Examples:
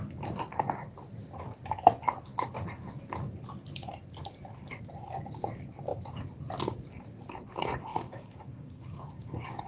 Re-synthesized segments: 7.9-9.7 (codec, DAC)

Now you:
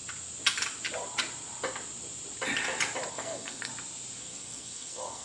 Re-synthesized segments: 3.1-3.7 (codec, SNAC); 4.2-5.2

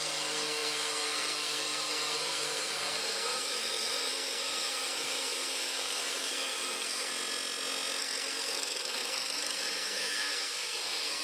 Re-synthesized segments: 0.0-7.1 (codec, SNAC); 8.0-11.2

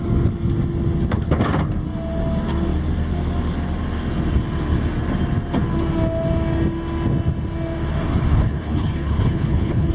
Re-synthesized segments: 8.1-9.9 (codec, HILCodec)

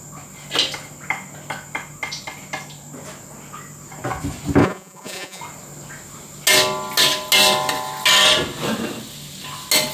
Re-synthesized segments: 4.6-5.4 (vocoder, Vocos)